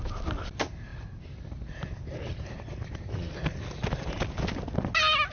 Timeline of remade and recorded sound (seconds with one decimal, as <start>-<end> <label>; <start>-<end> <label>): 0.0-5.3 recorded